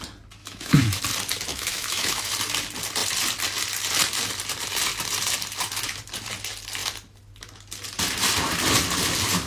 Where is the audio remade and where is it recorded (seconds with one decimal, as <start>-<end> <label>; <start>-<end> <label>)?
0.0-0.4 recorded; 0.4-1.0 remade; 1.0-1.5 recorded; 1.5-2.3 remade; 2.3-9.5 recorded